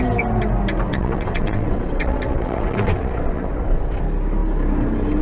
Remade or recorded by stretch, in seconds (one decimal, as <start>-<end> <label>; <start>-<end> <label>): 0.0-0.9 recorded; 0.9-4.0 remade; 4.0-5.2 recorded